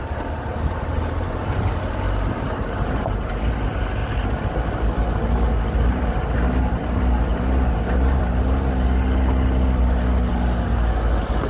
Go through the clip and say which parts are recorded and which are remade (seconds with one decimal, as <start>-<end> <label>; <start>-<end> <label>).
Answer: 0.0-0.5 recorded; 0.5-3.3 remade; 3.3-11.5 recorded